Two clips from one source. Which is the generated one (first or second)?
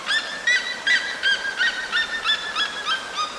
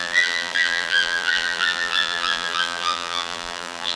second